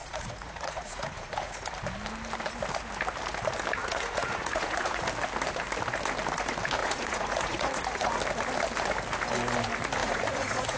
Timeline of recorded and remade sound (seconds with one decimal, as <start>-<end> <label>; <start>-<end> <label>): 0.0-1.7 remade; 1.7-3.8 recorded; 3.8-5.0 remade; 5.0-6.8 recorded; 6.8-8.2 remade; 8.2-10.0 recorded; 10.0-10.8 remade